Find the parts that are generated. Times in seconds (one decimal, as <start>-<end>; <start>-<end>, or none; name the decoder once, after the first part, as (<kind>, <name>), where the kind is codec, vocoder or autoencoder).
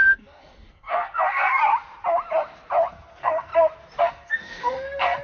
0.0-1.6 (codec, SNAC); 2.9-3.5; 4.0-5.2